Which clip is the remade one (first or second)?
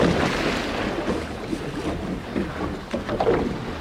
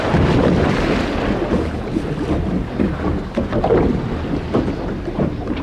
second